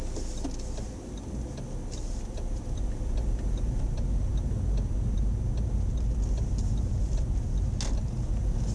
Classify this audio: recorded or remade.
recorded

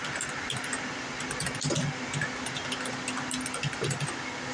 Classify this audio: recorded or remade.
recorded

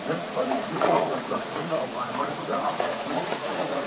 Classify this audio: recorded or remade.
remade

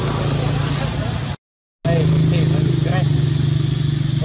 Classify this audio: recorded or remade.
recorded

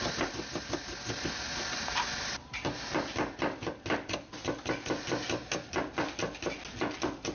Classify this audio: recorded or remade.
recorded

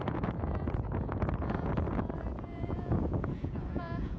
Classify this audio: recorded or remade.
remade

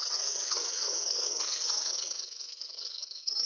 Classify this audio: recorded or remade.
remade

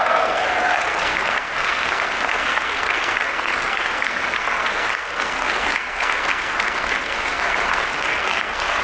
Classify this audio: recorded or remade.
remade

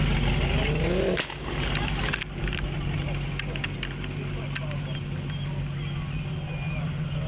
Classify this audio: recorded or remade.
recorded